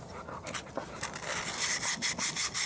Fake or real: real